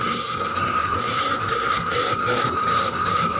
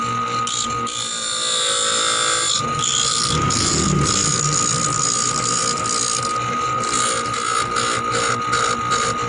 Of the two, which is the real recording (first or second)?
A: second